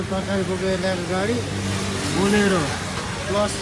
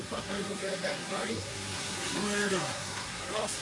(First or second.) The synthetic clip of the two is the second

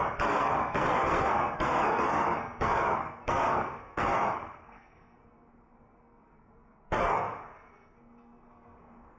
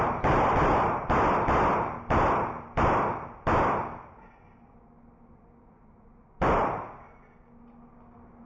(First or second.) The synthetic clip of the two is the first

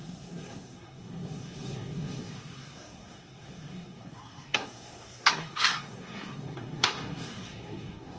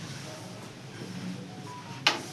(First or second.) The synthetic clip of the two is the first